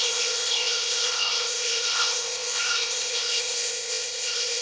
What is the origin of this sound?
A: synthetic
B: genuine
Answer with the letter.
A